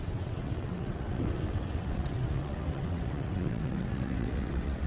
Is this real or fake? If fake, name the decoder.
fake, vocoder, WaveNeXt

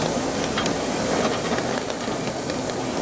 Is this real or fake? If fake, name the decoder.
real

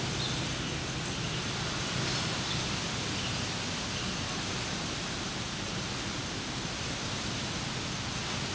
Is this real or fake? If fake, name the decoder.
real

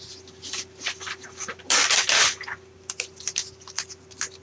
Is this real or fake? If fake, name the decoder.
real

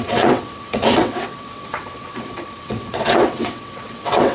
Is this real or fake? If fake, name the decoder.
fake, vocoder, WaveNeXt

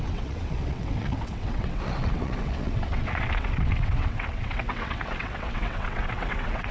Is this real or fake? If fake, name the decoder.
fake, vocoder, WaveNeXt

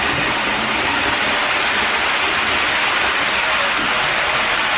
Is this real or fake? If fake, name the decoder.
real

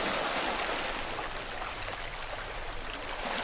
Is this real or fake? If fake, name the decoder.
real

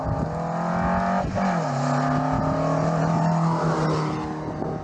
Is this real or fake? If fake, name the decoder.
real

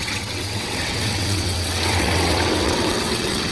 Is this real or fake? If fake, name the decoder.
fake, vocoder, WaveNeXt